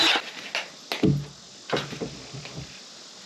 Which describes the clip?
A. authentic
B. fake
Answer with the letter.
A